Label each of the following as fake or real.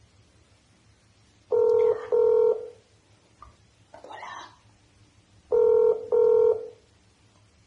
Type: real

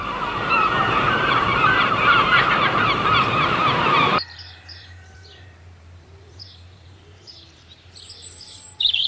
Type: fake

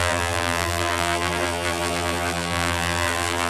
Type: fake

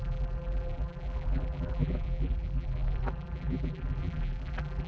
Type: fake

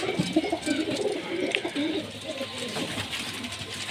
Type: real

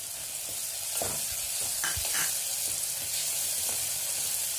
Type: real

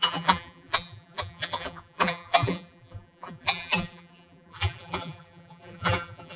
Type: fake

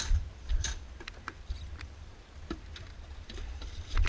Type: fake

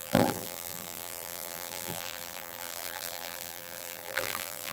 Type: fake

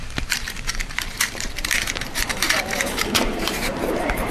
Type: fake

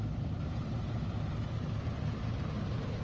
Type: fake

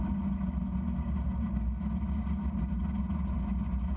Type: real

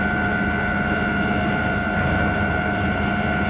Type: fake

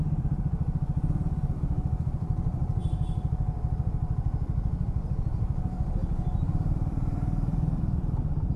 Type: fake